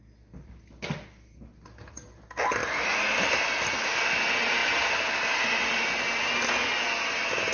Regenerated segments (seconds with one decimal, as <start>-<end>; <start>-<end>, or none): 2.6-3.5